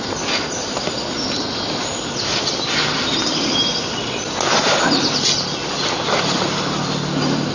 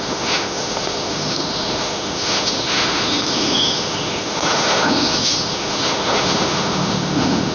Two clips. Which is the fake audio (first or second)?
second